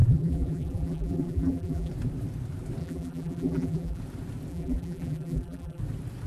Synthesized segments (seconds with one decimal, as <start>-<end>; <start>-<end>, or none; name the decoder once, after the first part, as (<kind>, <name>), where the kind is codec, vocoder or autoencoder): 0.0-1.9 (vocoder, BigVGAN v2); 2.8-4.0; 4.5-5.8